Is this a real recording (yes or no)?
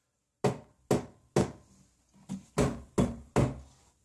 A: yes